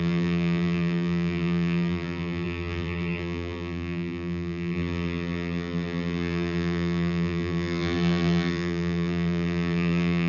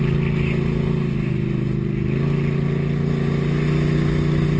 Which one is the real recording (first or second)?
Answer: second